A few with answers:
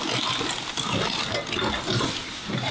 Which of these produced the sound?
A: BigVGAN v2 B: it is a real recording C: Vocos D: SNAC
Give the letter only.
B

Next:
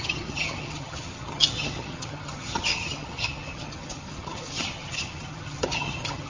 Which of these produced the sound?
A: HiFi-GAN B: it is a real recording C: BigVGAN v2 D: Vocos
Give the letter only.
A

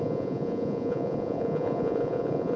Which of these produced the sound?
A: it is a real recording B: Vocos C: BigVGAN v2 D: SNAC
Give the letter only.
B